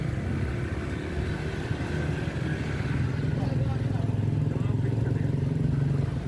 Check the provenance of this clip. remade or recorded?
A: recorded